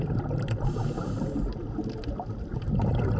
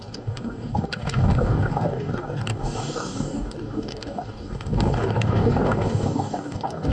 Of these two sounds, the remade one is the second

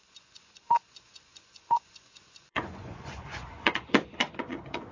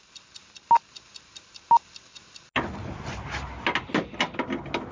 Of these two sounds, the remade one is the first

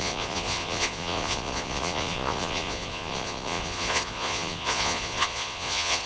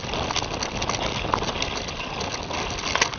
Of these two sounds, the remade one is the first